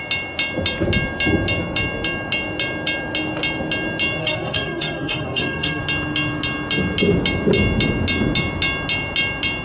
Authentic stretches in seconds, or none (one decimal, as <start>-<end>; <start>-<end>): 0.0-4.2; 5.8-9.6